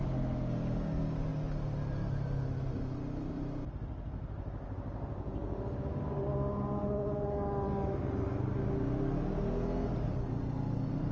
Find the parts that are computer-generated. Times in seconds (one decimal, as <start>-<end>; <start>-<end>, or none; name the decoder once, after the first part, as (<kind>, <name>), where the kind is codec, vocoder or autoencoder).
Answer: none